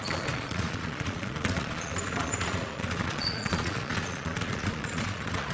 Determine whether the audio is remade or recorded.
remade